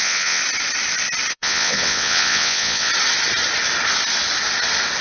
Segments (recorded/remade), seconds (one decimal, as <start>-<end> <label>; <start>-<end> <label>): 0.0-0.4 remade; 0.4-1.3 recorded; 1.3-2.9 remade; 2.9-5.0 recorded